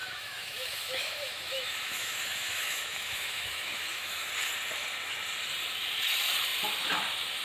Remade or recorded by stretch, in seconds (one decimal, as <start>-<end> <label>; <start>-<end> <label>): 0.0-4.3 remade; 4.3-7.4 recorded